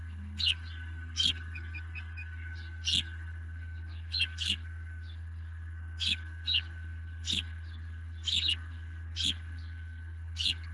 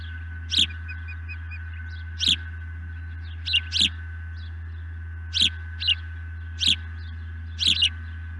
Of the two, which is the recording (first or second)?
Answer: second